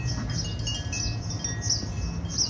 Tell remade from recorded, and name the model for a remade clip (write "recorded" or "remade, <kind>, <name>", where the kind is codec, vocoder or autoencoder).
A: recorded